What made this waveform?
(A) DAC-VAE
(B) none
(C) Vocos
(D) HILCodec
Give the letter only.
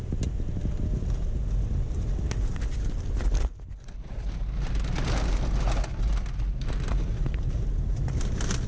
B